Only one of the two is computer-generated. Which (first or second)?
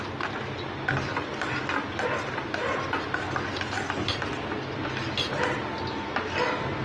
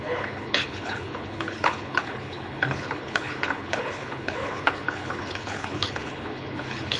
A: second